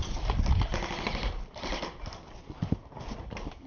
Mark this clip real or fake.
real